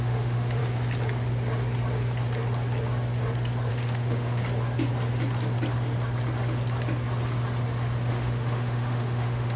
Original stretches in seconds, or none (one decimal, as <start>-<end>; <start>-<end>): 0.6-3.7; 4.4-8.1